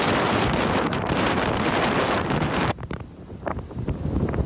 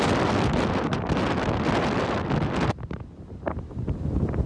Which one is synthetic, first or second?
first